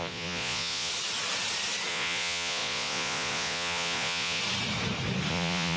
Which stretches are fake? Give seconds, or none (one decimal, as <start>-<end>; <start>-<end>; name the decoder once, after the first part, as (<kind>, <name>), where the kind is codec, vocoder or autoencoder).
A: 0.0-0.9 (vocoder, Vocos); 1.9-4.4; 5.3-5.8

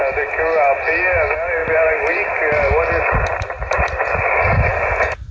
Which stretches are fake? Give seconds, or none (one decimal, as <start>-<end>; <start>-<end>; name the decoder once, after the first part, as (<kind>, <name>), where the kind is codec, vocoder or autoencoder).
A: none

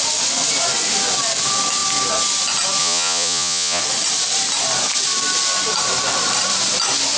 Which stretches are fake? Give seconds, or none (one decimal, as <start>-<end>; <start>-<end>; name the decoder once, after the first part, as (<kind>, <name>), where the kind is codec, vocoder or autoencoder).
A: 2.8-3.8 (vocoder, Vocos)

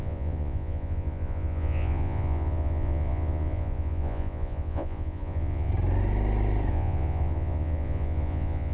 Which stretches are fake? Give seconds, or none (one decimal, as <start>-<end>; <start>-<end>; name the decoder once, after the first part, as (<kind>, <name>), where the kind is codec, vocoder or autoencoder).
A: 0.0-5.7 (vocoder, Vocos); 6.7-8.7

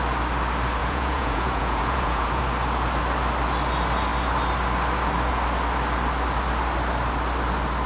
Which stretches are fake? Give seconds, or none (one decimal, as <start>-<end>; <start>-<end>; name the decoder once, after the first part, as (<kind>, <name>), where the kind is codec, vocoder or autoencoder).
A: 0.8-2.4 (vocoder, Vocos)

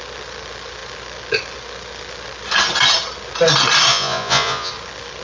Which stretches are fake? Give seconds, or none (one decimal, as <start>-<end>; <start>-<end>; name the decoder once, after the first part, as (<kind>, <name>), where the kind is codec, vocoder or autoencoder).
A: 3.9-4.7 (vocoder, Vocos)